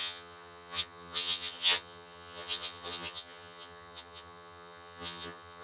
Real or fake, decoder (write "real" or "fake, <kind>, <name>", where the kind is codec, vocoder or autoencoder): fake, vocoder, HiFi-GAN